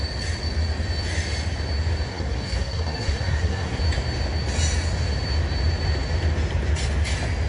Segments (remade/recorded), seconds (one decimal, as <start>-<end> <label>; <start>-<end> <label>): 0.0-2.1 recorded; 2.1-3.8 remade; 3.8-7.5 recorded